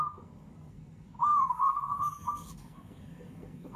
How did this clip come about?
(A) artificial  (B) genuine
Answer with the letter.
A